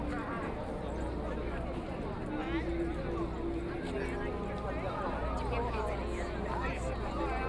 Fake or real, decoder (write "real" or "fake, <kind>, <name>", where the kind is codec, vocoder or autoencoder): real